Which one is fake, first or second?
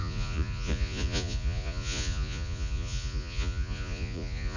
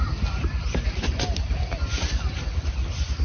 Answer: first